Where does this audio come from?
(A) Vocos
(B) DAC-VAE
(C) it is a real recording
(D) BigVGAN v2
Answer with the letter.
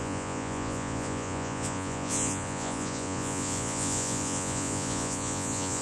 A